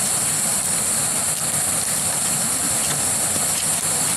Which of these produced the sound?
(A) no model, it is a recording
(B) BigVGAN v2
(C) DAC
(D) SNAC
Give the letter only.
B